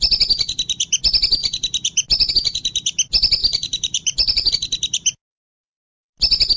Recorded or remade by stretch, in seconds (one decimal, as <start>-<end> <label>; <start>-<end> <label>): 0.0-3.4 recorded; 3.4-4.5 remade; 4.5-6.6 recorded